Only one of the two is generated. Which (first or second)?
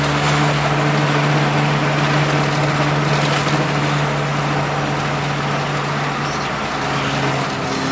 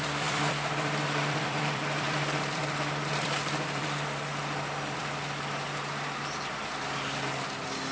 second